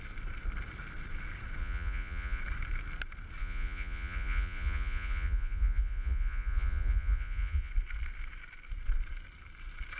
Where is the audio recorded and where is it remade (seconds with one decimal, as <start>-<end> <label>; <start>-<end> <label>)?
0.0-1.6 recorded; 1.6-2.4 remade; 2.4-3.4 recorded; 3.4-7.7 remade; 7.7-10.0 recorded